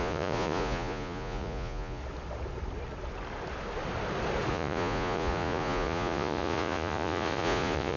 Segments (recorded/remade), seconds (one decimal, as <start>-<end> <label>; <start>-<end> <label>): 0.0-2.0 remade; 2.0-4.5 recorded; 4.5-8.0 remade